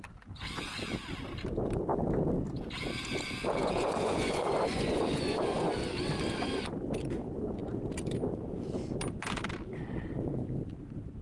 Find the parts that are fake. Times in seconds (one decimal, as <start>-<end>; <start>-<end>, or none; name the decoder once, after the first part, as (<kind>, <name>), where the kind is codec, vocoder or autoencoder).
3.6-5.8 (vocoder, Vocos)